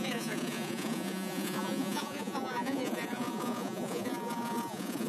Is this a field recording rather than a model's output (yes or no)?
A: no